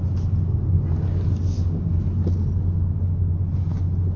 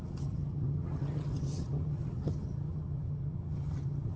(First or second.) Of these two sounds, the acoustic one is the first